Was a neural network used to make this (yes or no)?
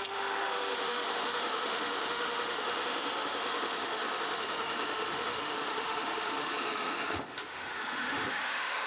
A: yes